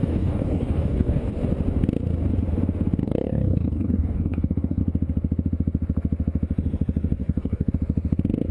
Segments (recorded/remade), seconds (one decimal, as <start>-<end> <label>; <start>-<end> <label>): 0.0-1.3 remade; 1.3-3.0 recorded; 3.0-4.8 remade; 4.8-7.2 recorded; 7.2-7.7 remade; 7.7-8.5 recorded